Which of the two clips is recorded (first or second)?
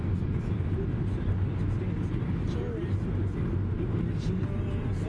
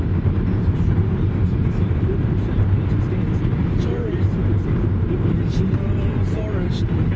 first